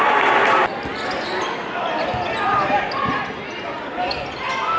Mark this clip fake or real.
real